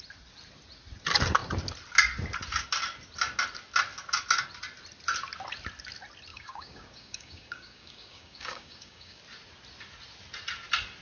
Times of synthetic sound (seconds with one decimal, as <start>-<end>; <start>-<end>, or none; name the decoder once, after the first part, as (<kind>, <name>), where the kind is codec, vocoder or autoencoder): 6.3-9.2 (codec, DAC)

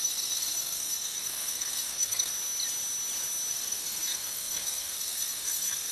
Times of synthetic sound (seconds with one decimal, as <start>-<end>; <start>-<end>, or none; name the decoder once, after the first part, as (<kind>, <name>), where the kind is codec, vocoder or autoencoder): 0.0-2.3 (codec, SNAC); 3.5-5.9